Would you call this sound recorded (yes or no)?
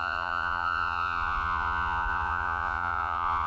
no